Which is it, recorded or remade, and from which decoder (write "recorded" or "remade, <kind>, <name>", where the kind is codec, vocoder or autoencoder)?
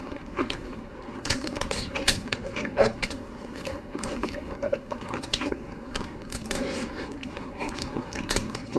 remade, codec, SNAC